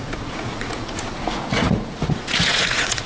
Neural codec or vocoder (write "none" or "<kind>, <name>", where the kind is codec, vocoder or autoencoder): vocoder, Vocos